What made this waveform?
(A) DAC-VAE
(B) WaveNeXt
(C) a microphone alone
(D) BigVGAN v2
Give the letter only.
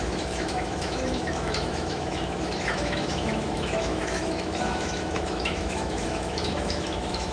A